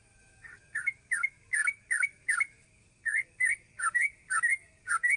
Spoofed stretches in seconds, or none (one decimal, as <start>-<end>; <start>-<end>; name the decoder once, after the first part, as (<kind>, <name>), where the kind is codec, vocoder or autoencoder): 0.0-5.2 (codec, DAC)